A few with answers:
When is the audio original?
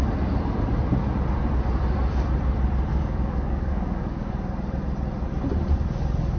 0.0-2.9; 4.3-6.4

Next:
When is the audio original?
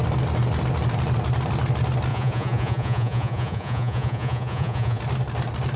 0.0-2.1; 5.0-5.8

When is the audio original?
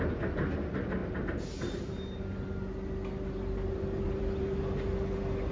0.0-5.5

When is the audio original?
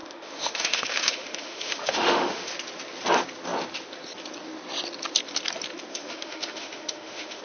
2.5-5.9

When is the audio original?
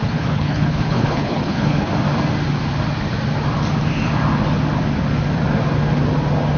1.9-6.6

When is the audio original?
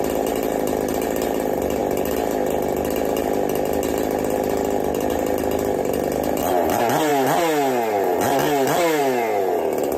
0.0-10.0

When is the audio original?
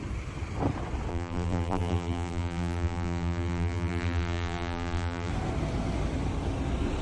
0.0-1.1; 5.3-7.0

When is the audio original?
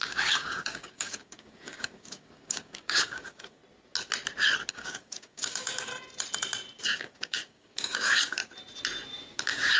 3.6-4.7; 5.9-6.8; 8.4-9.3